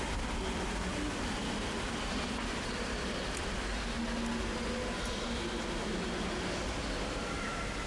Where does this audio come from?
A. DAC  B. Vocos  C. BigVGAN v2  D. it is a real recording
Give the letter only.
D